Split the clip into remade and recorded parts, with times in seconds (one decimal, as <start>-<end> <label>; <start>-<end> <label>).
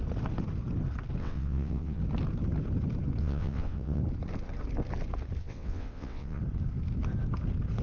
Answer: 0.0-1.2 recorded; 1.2-2.0 remade; 2.0-3.2 recorded; 3.2-4.0 remade; 4.0-5.4 recorded; 5.4-6.4 remade; 6.4-7.8 recorded